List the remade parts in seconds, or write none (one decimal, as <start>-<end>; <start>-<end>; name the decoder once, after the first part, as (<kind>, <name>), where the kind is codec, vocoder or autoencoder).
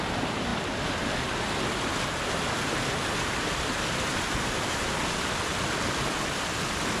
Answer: none